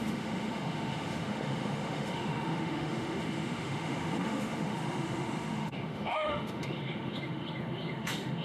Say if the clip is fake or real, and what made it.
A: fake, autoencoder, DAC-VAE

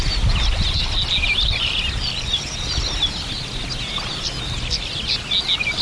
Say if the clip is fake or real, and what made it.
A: real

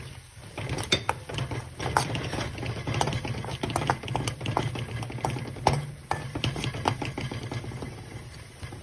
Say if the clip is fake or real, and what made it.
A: real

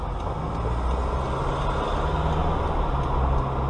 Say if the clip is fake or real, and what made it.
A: real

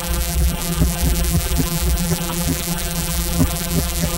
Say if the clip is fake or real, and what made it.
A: fake, vocoder, BigVGAN v2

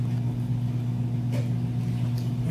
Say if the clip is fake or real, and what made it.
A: real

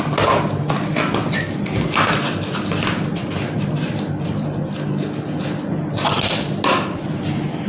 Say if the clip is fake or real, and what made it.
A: real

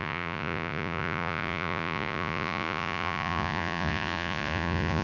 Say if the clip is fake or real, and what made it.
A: fake, vocoder, Vocos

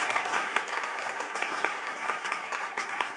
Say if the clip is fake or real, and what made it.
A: fake, codec, SNAC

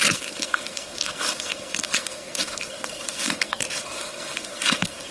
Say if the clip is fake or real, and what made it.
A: fake, codec, SNAC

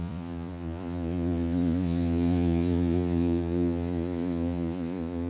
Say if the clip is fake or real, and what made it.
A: fake, vocoder, Vocos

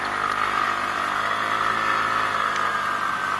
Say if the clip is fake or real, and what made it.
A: real